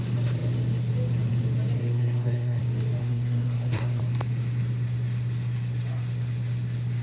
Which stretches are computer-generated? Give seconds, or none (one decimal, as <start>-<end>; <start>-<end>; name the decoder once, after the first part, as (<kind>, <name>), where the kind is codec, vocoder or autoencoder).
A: 1.8-2.6 (codec, SNAC); 3.0-4.0